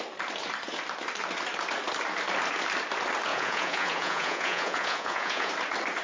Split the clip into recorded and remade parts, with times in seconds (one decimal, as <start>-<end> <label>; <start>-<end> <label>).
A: 0.0-3.3 recorded; 3.3-5.5 remade; 5.5-6.0 recorded